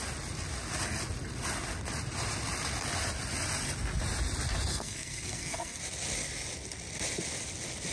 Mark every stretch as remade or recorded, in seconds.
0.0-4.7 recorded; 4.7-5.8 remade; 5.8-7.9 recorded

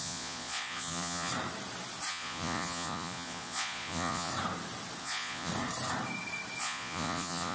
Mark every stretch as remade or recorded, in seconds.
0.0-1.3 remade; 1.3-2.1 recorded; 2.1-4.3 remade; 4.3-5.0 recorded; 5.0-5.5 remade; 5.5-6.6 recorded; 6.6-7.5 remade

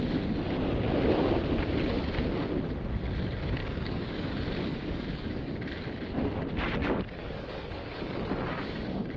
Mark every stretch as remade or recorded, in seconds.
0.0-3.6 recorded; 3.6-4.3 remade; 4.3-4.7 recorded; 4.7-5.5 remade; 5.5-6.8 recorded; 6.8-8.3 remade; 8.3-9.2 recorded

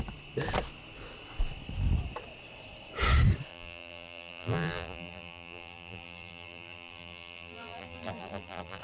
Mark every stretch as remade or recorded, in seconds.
0.0-3.5 recorded; 3.5-8.8 remade